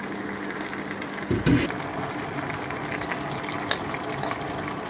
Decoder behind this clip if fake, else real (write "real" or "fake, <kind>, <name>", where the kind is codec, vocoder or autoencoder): real